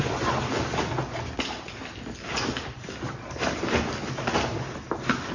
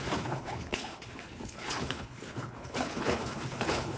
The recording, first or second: first